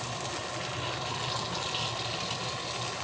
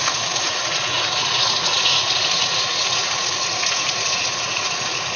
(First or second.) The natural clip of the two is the first